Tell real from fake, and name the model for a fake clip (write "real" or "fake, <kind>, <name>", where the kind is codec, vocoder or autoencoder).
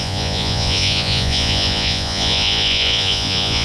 fake, vocoder, Vocos